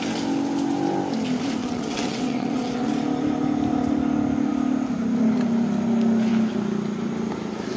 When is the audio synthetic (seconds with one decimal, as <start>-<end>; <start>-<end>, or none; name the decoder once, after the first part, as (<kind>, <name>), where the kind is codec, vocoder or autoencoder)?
1.6-2.9 (vocoder, WaveNeXt)